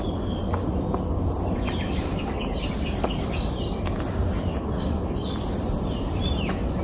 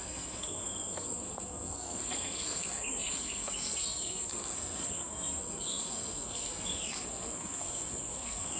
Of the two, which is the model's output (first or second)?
second